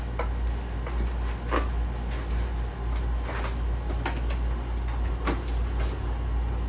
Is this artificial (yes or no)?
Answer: no